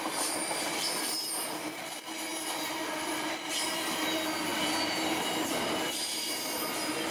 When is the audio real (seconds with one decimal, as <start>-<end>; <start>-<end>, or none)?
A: 0.0-7.1